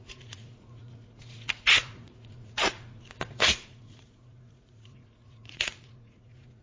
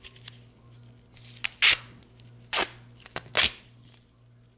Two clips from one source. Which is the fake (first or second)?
first